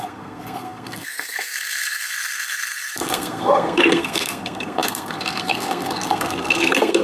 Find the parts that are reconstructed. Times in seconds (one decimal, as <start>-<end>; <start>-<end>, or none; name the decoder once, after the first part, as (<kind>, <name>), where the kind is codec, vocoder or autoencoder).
0.0-7.0 (codec, SNAC)